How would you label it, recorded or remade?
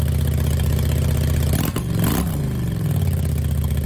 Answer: recorded